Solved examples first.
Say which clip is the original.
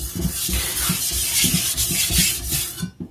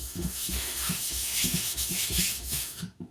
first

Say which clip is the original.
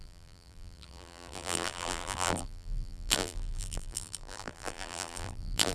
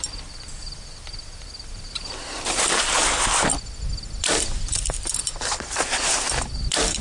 second